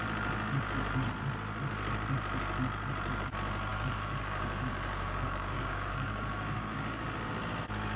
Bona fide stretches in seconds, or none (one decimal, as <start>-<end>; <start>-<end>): 0.0-3.7; 7.3-8.0